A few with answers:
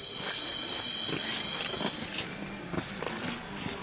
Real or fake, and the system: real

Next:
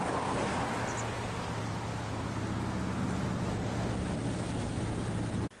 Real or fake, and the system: real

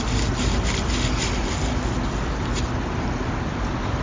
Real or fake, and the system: real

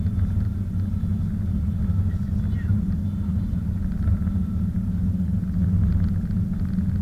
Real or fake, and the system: real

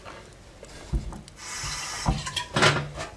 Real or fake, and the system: real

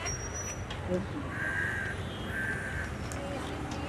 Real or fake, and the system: real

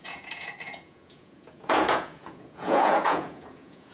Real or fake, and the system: fake, vocoder, Vocos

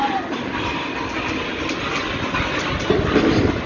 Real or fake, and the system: real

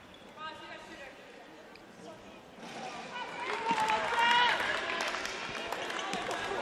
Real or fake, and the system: real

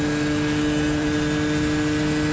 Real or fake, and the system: real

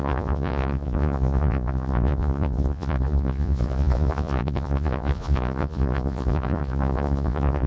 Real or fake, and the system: fake, vocoder, Vocos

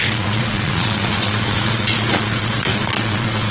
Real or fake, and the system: fake, vocoder, Vocos